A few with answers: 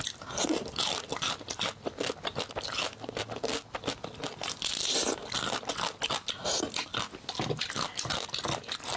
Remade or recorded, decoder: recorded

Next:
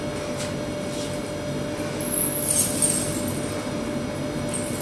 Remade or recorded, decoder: recorded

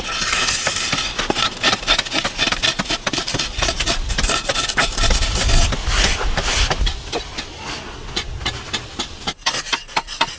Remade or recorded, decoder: recorded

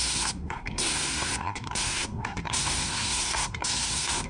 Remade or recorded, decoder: remade, codec, SNAC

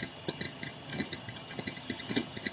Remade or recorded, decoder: remade, vocoder, HiFi-GAN